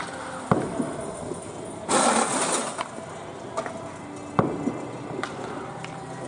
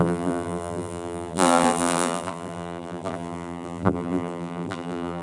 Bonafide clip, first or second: first